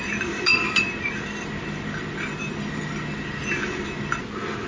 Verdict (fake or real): real